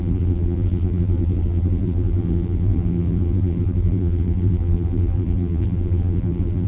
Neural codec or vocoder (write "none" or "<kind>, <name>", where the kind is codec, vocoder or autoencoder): vocoder, BigVGAN v2